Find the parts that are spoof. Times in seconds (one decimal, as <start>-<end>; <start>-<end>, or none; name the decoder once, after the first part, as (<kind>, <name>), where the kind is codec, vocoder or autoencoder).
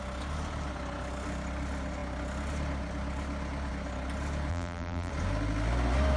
4.5-5.1 (vocoder, BigVGAN v2)